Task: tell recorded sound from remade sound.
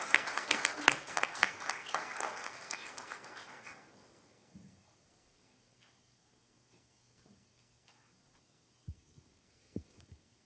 remade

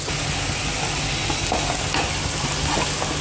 recorded